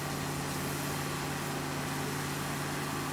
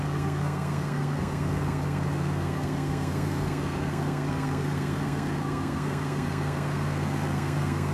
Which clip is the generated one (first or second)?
second